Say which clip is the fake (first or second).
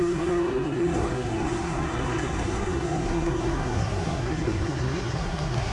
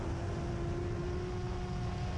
first